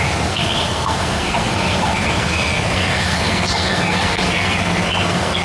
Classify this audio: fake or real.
fake